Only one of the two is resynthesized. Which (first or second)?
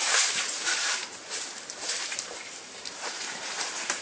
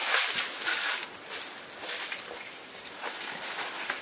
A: first